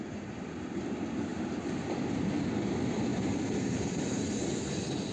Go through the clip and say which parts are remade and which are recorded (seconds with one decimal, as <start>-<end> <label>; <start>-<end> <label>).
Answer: 0.0-1.3 recorded; 1.3-2.2 remade; 2.2-3.1 recorded; 3.1-4.0 remade; 4.0-5.1 recorded